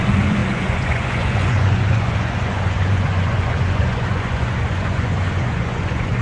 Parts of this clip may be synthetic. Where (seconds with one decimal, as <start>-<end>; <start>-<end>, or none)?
0.0-6.2